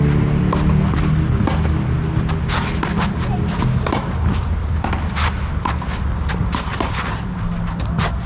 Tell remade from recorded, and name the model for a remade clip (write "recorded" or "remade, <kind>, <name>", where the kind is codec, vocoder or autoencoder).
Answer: recorded